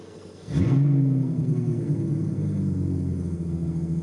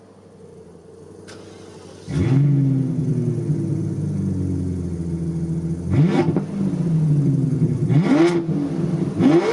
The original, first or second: second